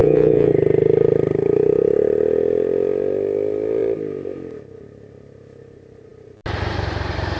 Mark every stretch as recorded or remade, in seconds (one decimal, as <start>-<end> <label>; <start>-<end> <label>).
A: 0.0-0.5 remade; 0.5-7.4 recorded